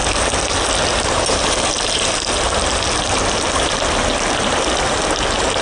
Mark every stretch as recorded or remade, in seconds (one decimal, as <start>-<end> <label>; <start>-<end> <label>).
0.0-5.6 recorded